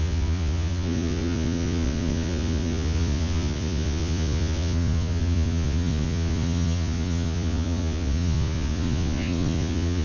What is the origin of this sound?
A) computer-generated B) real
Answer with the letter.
A